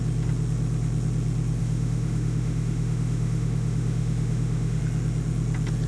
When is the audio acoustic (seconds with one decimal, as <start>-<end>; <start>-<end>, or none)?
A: 0.0-1.6; 4.8-5.9